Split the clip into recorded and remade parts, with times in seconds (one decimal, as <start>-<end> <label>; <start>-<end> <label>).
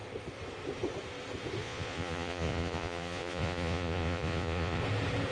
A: 0.0-1.6 recorded; 1.6-4.8 remade; 4.8-5.3 recorded